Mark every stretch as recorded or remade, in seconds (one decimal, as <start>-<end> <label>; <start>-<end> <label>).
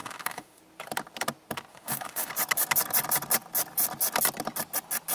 0.0-0.6 remade; 0.6-1.7 recorded; 1.7-2.3 remade; 2.3-5.1 recorded